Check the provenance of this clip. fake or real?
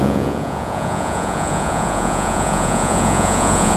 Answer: fake